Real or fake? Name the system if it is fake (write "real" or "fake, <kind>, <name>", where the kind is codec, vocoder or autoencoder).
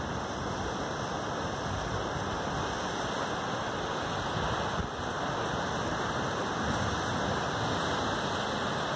real